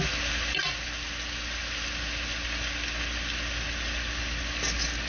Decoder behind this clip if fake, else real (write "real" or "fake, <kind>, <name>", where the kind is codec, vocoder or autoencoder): real